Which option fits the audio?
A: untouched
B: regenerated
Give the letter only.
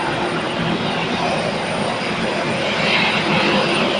A